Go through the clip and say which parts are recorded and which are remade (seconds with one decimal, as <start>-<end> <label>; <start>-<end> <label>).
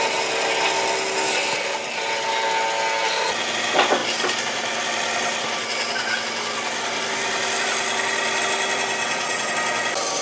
0.0-9.0 recorded; 9.0-9.5 remade; 9.5-10.2 recorded